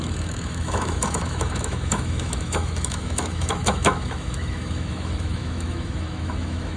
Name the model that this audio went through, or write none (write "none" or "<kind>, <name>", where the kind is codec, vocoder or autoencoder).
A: autoencoder, DAC-VAE